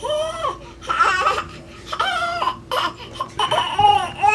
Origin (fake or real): fake